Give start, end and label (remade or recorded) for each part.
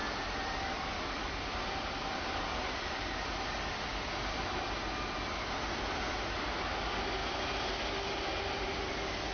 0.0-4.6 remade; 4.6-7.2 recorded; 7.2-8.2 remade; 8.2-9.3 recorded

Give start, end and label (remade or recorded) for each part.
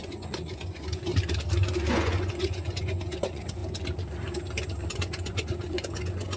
0.0-1.1 remade; 1.1-1.9 recorded; 1.9-3.6 remade; 3.6-4.9 recorded; 4.9-6.4 remade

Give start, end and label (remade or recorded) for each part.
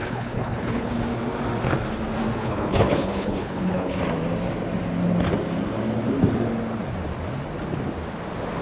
0.0-0.9 remade; 0.9-2.4 recorded; 2.4-4.0 remade; 4.0-8.6 recorded